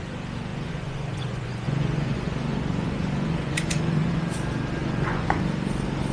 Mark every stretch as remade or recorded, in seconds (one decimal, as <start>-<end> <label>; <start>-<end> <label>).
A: 0.0-0.5 recorded; 0.5-4.2 remade; 4.2-4.8 recorded; 4.8-5.4 remade; 5.4-6.1 recorded